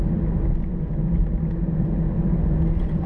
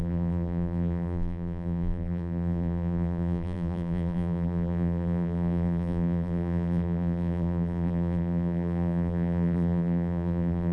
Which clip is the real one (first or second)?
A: first